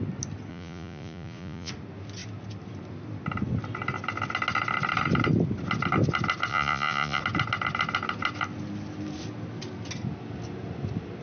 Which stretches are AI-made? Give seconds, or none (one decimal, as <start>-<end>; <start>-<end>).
0.5-1.7; 6.5-7.2